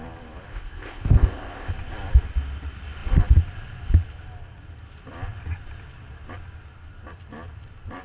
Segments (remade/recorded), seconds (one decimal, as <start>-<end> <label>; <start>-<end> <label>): 0.0-0.5 recorded; 0.5-1.7 remade; 1.7-8.0 recorded